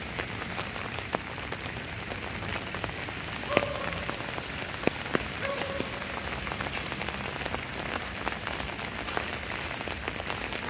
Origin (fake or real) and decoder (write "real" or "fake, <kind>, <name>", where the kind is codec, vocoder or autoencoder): real